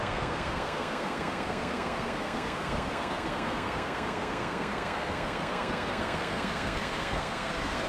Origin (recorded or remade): remade